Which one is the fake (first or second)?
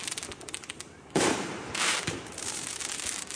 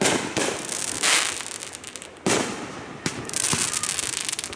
first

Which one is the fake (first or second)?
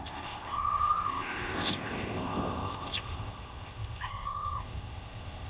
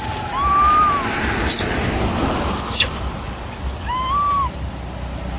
first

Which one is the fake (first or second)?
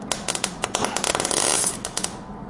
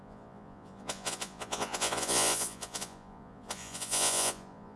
second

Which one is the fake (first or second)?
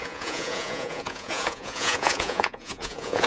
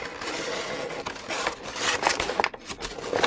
first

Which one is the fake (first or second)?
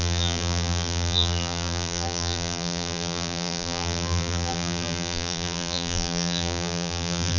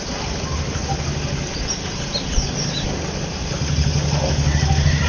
first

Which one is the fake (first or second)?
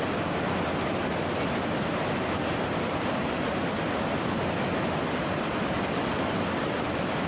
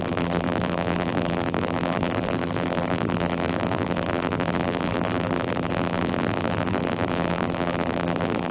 second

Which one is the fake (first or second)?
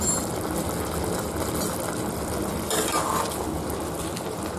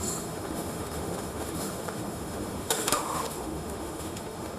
second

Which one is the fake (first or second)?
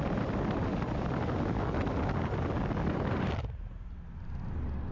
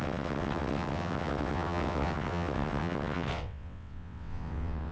second